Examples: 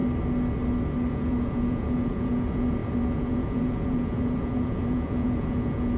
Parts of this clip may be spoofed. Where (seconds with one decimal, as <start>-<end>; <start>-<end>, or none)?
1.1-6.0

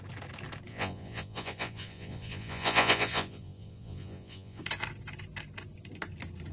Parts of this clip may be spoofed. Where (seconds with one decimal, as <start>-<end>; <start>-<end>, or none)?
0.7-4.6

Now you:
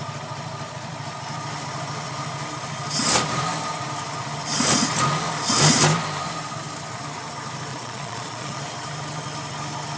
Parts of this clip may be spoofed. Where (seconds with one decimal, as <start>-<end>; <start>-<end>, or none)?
7.7-8.6